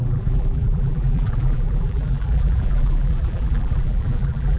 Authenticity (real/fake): fake